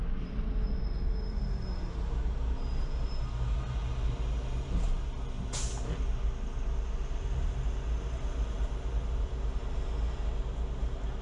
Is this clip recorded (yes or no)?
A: yes